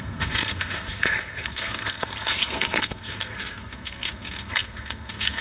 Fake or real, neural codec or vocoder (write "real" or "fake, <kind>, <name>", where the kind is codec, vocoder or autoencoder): fake, codec, SNAC